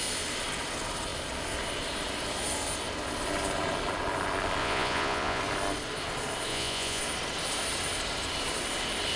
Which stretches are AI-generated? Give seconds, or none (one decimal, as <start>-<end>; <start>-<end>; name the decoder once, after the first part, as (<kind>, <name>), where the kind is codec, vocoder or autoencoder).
4.6-5.4 (vocoder, Vocos); 6.5-7.0